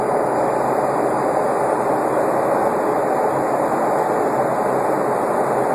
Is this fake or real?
real